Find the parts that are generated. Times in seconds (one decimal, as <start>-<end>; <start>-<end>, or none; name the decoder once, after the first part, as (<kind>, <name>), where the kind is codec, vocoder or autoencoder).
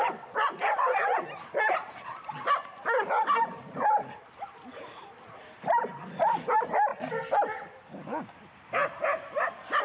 none